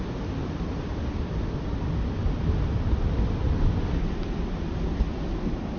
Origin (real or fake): real